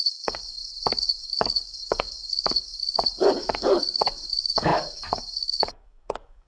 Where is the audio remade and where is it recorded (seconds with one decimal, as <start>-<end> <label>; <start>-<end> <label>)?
0.0-0.6 remade; 0.6-1.2 recorded; 1.2-6.5 remade